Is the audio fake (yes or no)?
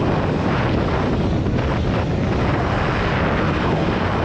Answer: no